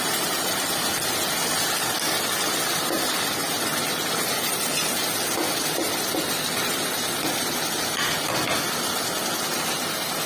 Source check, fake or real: real